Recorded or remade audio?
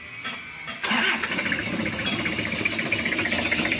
recorded